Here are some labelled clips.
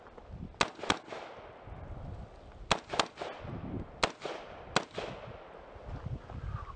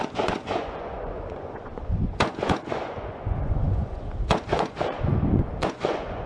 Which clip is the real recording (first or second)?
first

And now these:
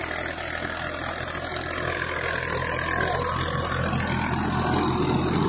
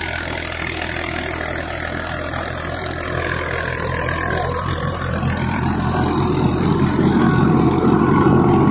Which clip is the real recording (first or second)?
first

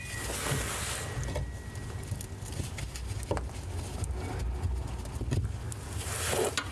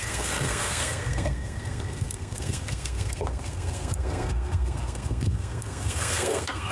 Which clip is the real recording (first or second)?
first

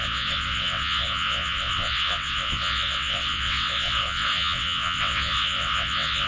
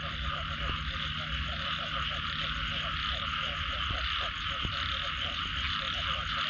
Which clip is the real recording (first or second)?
second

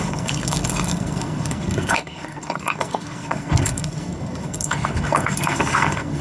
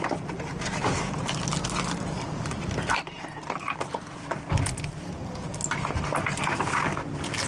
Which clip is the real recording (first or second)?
second